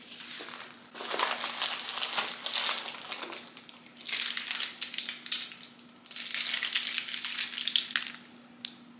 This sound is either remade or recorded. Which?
recorded